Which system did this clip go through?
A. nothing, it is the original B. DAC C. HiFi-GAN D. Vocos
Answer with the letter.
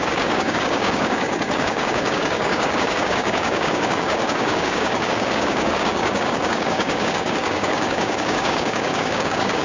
B